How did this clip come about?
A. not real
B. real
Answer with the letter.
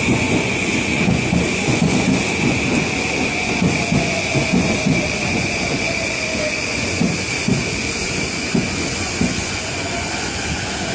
A